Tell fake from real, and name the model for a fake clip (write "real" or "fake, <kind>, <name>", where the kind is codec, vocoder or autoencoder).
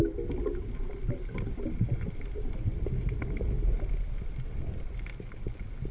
real